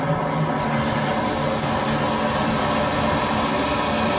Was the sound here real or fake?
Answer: real